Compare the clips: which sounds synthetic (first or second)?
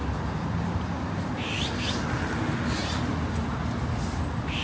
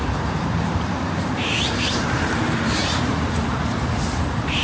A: second